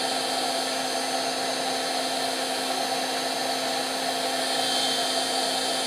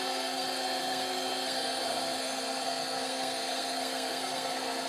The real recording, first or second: first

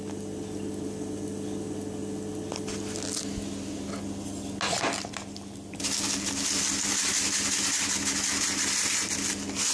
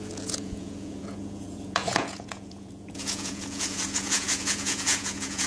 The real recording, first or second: first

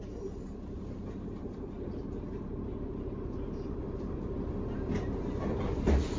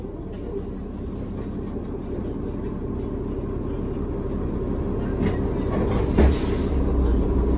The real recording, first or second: second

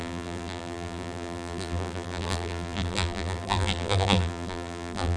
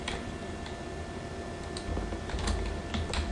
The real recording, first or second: second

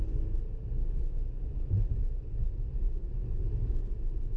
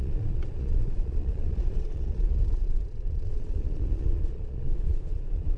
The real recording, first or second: first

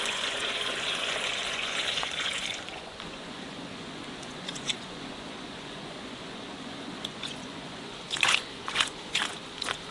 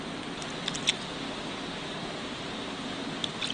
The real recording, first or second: second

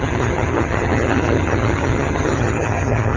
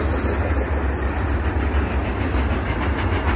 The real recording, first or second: second